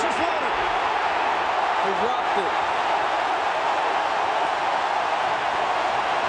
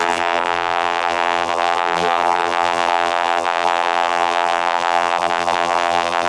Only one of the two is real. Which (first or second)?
first